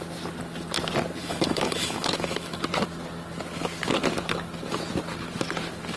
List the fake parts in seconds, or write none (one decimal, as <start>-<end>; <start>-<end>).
1.2-2.6